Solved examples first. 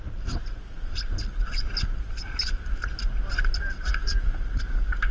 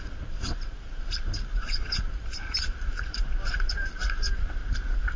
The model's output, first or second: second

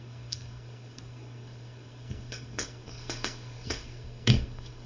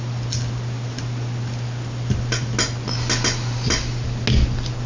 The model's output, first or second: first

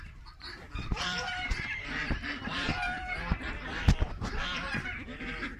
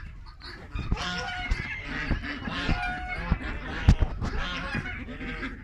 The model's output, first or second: first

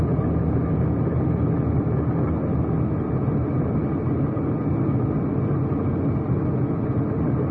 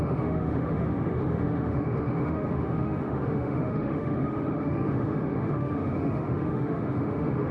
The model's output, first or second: second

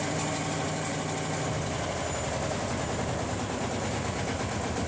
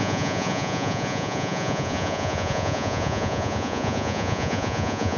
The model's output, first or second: second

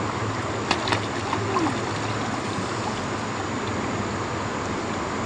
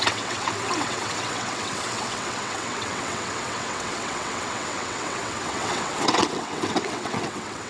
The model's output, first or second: second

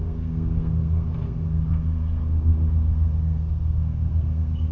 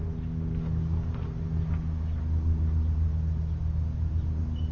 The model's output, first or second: first